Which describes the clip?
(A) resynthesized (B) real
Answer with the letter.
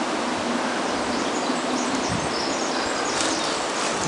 B